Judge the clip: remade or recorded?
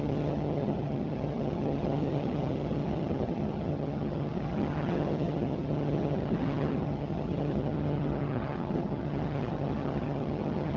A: remade